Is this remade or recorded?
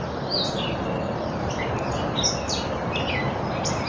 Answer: recorded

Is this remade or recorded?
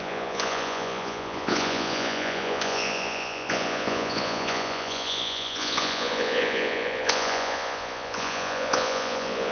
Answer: remade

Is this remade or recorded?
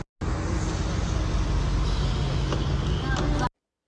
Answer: recorded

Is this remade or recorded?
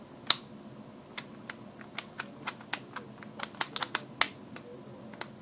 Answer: recorded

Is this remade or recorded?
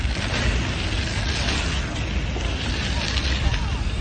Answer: recorded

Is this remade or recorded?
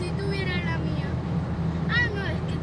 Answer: recorded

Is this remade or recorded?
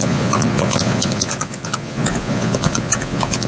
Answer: remade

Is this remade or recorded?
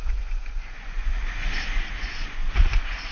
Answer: remade